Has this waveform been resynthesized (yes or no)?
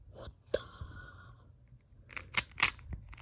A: no